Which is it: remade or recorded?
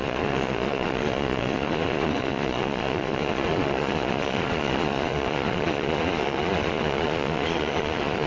remade